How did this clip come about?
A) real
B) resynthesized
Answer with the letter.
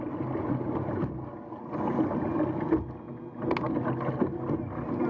A